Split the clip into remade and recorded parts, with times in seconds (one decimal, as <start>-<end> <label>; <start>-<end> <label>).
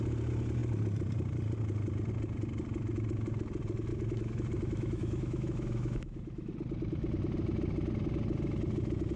0.0-3.9 recorded; 3.9-6.5 remade; 6.5-9.2 recorded